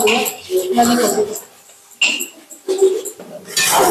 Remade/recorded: recorded